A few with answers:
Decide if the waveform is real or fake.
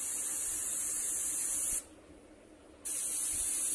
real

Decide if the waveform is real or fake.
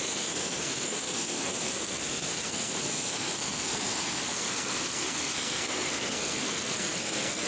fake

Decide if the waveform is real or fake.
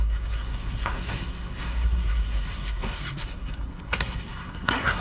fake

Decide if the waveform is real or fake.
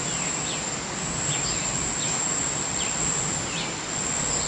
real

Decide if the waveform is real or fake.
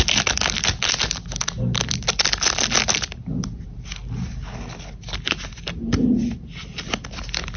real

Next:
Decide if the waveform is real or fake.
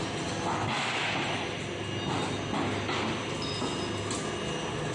real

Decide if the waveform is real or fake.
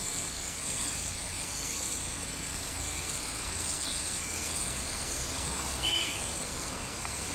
fake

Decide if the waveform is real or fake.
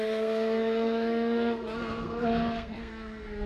fake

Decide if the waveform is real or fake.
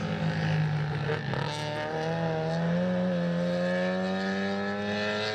real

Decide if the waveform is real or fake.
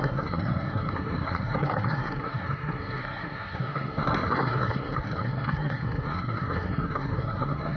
fake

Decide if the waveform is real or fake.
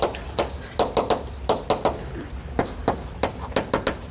real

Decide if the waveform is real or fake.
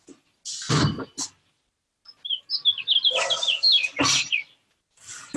real